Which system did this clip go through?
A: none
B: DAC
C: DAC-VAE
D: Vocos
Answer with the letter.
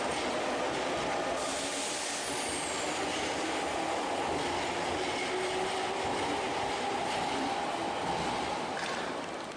A